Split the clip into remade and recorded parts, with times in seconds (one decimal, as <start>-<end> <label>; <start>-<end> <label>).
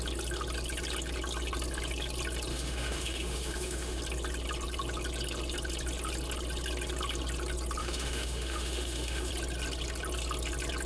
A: 0.0-2.5 recorded; 2.5-4.0 remade; 4.0-7.8 recorded; 7.8-9.3 remade; 9.3-10.9 recorded